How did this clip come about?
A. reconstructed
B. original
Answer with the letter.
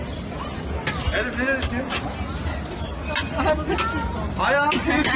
B